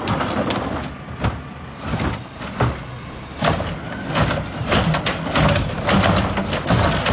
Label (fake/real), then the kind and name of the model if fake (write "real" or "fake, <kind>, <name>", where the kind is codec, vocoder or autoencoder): real